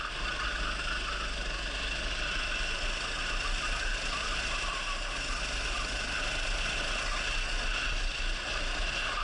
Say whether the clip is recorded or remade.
recorded